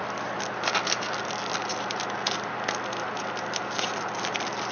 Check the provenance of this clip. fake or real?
real